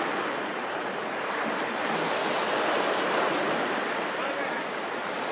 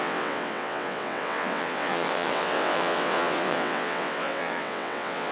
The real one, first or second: first